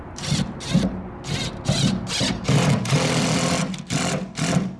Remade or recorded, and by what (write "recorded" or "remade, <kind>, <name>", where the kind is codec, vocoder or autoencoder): recorded